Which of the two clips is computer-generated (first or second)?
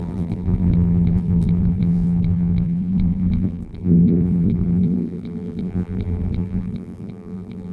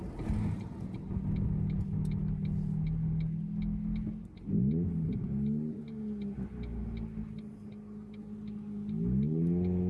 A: first